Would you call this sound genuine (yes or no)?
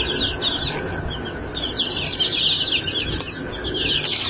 yes